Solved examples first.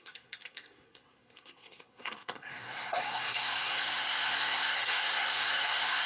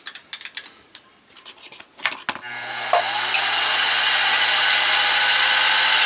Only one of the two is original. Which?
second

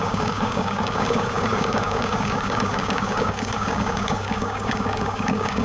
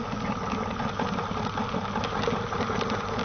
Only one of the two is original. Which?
second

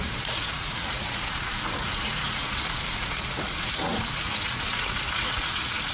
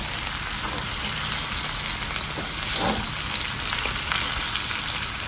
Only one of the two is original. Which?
second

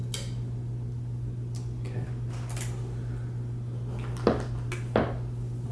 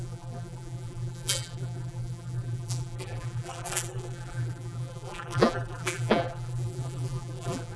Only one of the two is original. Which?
first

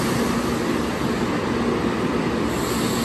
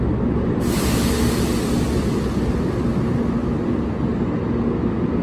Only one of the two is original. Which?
second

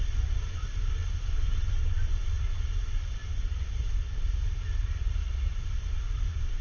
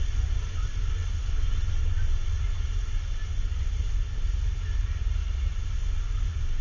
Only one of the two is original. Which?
second